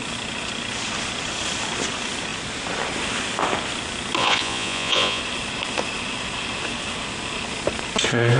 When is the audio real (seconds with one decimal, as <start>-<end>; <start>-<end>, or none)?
0.0-4.2; 5.2-8.4